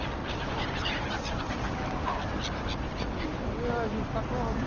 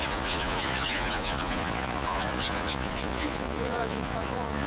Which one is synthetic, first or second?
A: second